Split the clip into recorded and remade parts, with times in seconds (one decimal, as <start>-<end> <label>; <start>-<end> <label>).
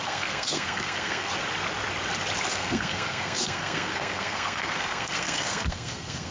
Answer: 0.0-1.3 remade; 1.3-2.5 recorded; 2.5-6.3 remade